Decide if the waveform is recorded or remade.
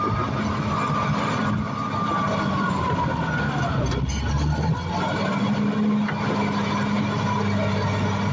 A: recorded